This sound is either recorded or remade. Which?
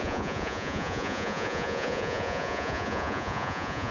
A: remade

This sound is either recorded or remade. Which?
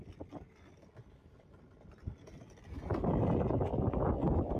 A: recorded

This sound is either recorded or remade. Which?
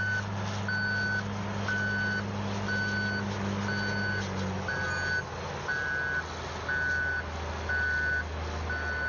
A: recorded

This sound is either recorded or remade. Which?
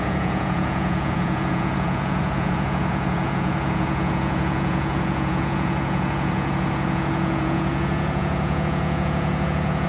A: remade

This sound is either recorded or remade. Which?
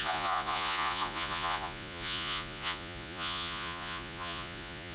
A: remade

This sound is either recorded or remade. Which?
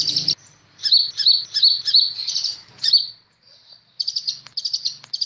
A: recorded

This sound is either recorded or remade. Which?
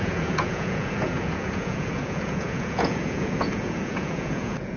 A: remade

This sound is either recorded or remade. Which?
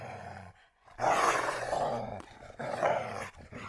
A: remade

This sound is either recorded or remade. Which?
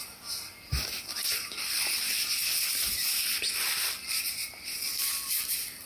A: recorded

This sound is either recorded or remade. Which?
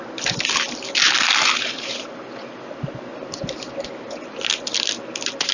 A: recorded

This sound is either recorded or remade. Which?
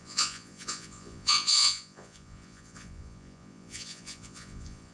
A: remade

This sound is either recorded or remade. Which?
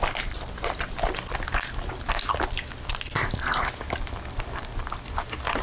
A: recorded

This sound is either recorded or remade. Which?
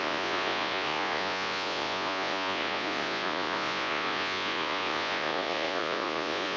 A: remade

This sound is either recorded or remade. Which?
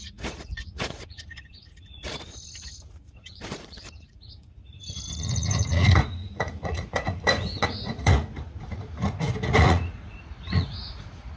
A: remade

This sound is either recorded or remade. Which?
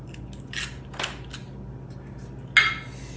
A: recorded